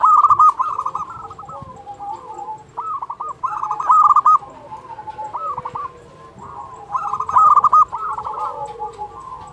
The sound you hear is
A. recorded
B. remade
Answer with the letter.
A